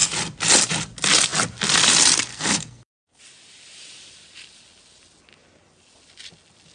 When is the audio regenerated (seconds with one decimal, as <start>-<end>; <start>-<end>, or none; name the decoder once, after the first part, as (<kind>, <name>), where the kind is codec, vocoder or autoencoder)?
2.3-3.2 (codec, SNAC)